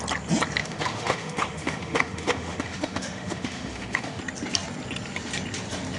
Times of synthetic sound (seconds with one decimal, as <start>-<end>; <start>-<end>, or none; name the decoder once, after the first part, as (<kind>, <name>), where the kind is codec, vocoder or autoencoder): 0.6-4.2 (autoencoder, DAC-VAE)